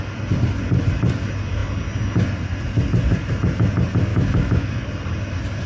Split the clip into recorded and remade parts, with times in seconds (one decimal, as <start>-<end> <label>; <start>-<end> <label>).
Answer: 0.0-4.1 recorded; 4.1-4.7 remade; 4.7-5.7 recorded